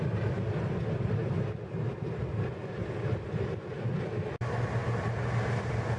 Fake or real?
real